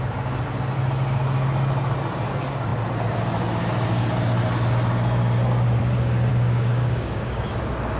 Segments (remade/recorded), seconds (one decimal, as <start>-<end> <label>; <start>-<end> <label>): 0.0-6.3 recorded; 6.3-7.5 remade; 7.5-8.0 recorded